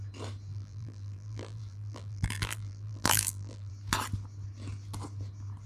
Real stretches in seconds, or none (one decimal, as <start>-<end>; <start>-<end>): 0.0-0.5; 3.7-5.7